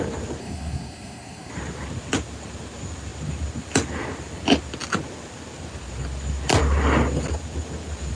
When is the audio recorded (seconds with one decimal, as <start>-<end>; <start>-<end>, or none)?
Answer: 0.0-0.4; 1.5-8.1